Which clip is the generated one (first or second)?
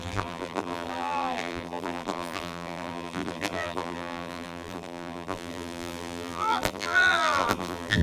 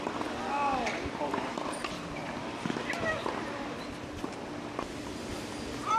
first